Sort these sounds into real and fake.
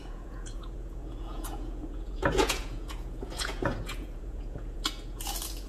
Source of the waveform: fake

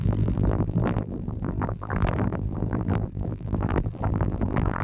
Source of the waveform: fake